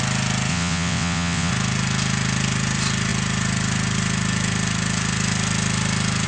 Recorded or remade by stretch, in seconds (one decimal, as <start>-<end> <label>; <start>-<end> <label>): 0.0-0.5 recorded; 0.5-1.5 remade; 1.5-6.3 recorded